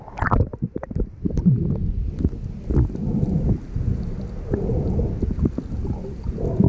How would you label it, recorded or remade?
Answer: recorded